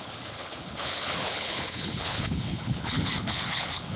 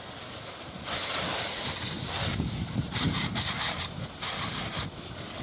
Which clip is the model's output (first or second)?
first